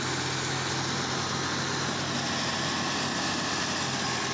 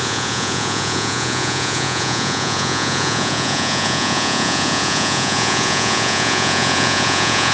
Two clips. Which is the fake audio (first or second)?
second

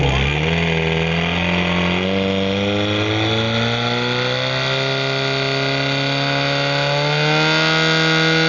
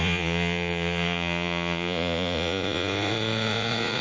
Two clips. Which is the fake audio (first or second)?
second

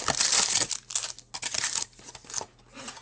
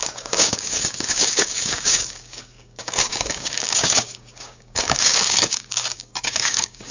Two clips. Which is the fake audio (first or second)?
second